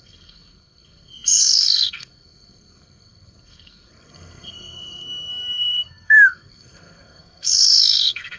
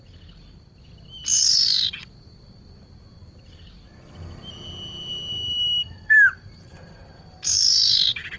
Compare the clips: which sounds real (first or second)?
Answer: second